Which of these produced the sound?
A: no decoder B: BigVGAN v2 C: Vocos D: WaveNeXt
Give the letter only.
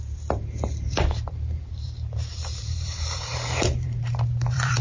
B